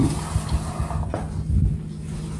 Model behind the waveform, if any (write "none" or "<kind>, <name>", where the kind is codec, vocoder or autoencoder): none